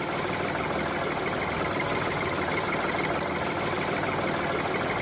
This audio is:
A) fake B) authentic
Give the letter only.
B